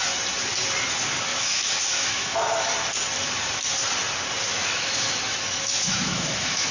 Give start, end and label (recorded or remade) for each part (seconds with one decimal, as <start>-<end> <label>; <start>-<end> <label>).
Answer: 0.0-1.3 recorded; 1.3-2.7 remade; 2.7-4.5 recorded; 4.5-6.7 remade